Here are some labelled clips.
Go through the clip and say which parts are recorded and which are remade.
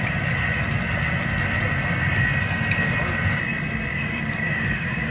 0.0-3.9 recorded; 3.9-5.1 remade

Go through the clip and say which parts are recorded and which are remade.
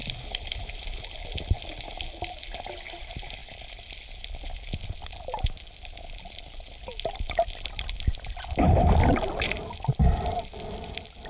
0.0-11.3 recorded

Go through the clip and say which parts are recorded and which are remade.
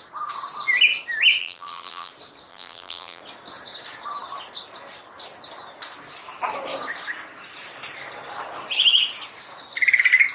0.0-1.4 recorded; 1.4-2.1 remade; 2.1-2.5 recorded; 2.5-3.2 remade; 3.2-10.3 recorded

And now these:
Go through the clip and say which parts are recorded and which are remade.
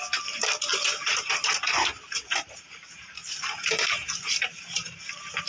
0.0-0.7 recorded; 0.7-1.5 remade; 1.5-2.1 recorded; 2.1-5.5 remade